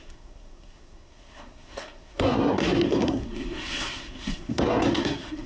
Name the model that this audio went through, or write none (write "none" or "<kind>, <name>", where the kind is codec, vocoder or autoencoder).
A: codec, SNAC